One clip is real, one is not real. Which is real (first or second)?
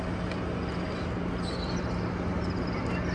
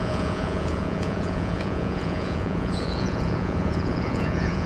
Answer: first